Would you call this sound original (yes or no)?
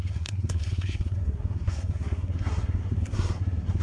no